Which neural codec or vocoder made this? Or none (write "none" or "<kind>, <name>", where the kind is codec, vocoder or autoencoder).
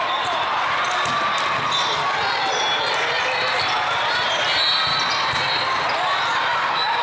none